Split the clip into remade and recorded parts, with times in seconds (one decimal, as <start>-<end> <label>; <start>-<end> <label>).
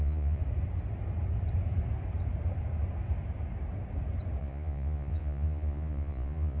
0.0-0.4 remade; 0.4-4.4 recorded; 4.4-6.6 remade